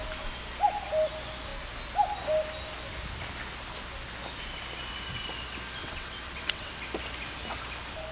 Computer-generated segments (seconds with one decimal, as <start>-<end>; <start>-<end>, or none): 5.8-6.7

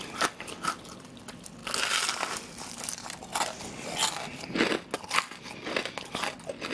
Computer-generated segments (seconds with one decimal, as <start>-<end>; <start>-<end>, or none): none

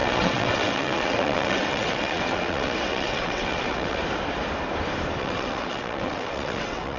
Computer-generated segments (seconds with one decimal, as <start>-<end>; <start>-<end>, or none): 0.0-4.0; 5.2-7.0